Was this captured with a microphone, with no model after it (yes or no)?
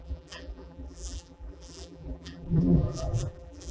no